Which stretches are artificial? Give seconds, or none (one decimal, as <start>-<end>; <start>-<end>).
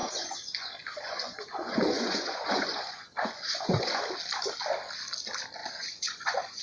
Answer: 0.0-4.0; 5.6-6.6